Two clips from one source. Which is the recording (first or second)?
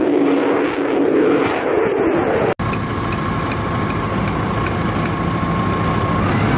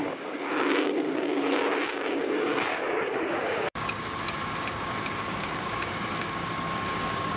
first